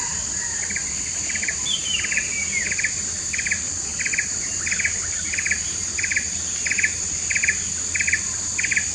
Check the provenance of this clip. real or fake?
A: real